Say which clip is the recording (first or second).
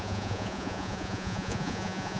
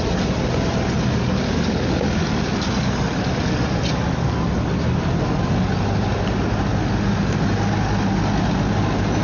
second